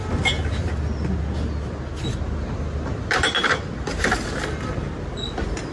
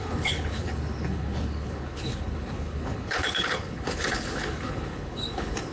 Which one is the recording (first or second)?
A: first